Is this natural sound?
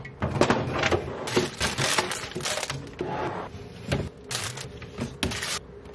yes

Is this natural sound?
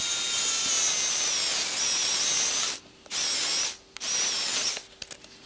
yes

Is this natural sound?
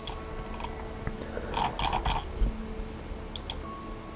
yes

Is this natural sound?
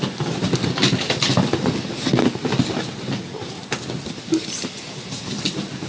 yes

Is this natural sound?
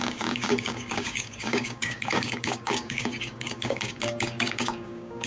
no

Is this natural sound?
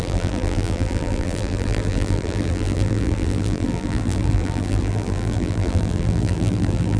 no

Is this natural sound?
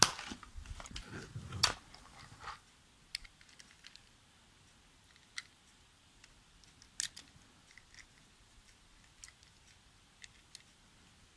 yes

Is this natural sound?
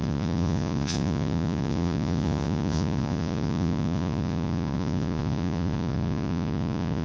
no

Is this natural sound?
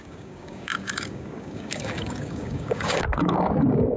no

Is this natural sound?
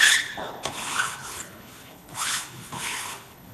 no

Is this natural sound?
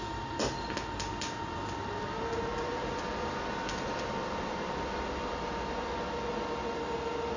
yes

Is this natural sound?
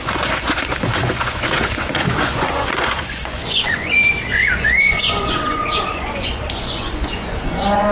no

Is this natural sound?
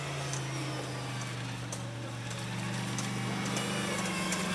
yes